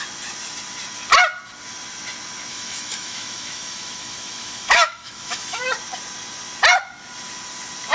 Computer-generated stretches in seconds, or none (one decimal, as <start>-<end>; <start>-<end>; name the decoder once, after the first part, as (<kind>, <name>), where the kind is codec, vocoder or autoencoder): 2.5-5.6 (autoencoder, DAC-VAE)